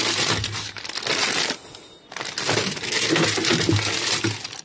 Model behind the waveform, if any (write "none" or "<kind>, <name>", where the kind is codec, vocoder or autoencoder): none